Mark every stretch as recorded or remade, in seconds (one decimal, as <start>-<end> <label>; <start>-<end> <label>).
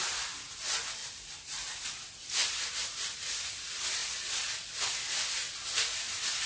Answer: 0.0-1.0 recorded; 1.0-3.3 remade; 3.3-6.5 recorded